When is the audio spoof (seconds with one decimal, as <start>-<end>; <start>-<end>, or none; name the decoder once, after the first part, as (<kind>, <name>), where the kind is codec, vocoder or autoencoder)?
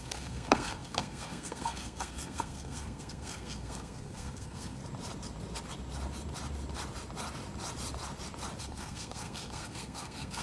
0.0-4.8 (codec, SNAC); 8.6-10.4